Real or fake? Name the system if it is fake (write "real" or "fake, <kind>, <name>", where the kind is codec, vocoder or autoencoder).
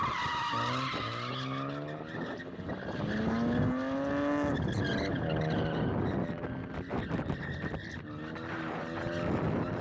real